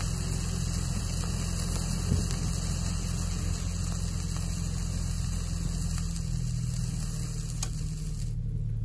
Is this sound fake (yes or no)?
no